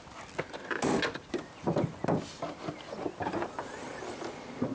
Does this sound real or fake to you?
real